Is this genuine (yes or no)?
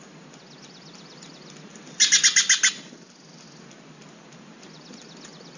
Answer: yes